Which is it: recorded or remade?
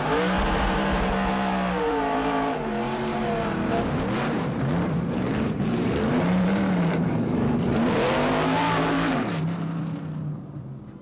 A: remade